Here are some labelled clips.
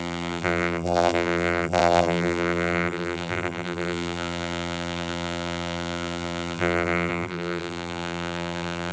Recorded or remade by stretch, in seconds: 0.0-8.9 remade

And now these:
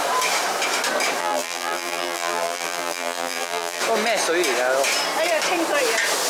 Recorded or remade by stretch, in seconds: 0.0-1.2 recorded; 1.2-3.8 remade; 3.8-6.3 recorded

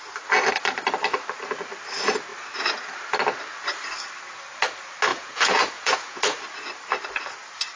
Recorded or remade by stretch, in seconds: 0.0-5.1 recorded; 5.1-6.2 remade; 6.2-7.8 recorded